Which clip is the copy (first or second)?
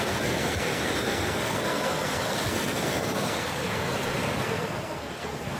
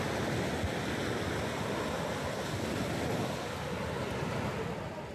first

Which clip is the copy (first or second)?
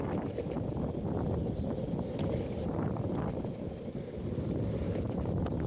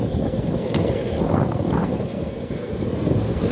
second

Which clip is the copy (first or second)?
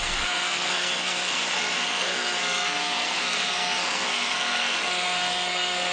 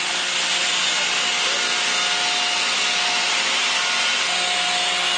first